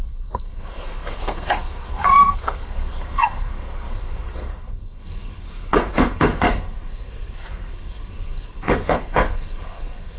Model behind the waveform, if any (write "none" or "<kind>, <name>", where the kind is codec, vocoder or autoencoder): codec, SNAC